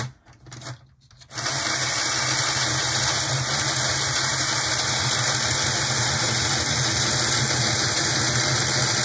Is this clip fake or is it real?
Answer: real